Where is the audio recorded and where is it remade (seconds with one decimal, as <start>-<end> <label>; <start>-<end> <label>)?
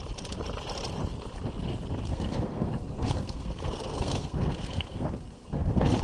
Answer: 0.0-2.1 recorded; 2.1-6.0 remade